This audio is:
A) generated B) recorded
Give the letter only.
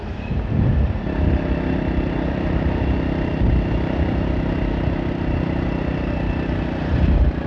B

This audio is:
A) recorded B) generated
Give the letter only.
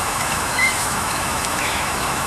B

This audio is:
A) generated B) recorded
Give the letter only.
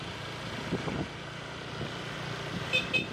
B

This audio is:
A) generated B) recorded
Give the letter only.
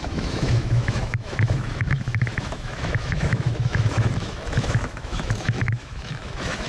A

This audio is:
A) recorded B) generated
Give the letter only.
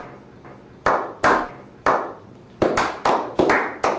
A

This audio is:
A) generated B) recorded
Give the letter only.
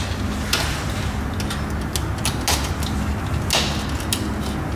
B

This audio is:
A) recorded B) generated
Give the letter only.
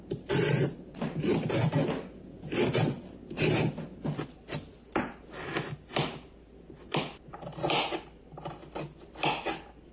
A